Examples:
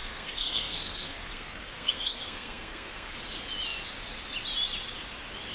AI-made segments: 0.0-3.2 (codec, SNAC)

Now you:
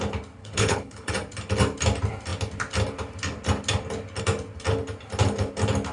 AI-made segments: 0.4-1.1 (codec, HILCodec)

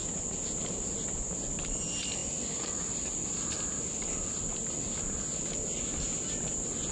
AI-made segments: none

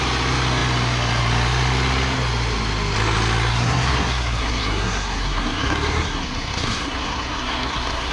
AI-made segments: 3.5-8.1 (codec, SNAC)

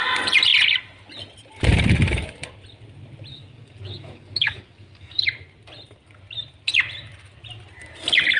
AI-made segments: 3.3-5.2 (codec, DAC)